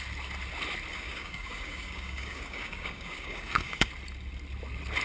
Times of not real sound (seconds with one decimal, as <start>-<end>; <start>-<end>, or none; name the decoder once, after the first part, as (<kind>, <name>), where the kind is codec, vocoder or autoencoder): 0.9-3.9 (codec, DAC)